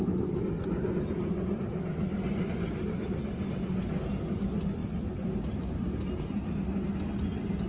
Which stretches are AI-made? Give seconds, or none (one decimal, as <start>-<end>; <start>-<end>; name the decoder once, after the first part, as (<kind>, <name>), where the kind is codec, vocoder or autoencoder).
none